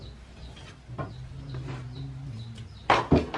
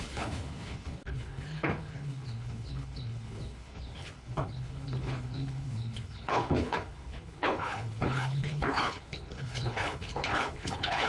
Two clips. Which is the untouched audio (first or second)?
first